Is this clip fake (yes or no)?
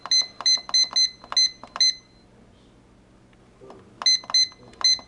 no